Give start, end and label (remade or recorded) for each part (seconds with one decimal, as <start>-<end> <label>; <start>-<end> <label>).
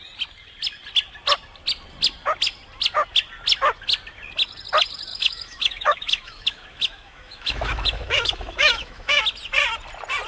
0.0-5.1 recorded; 5.1-9.2 remade; 9.2-10.3 recorded